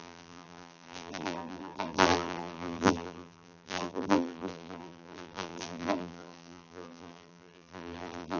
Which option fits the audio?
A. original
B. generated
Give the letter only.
B